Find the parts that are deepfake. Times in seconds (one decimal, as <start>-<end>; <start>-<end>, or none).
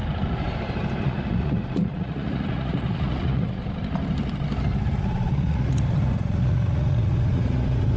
1.0-3.6; 5.0-8.0